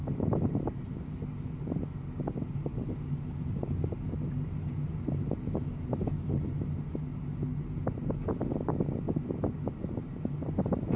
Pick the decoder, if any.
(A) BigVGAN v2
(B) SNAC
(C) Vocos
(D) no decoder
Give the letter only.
D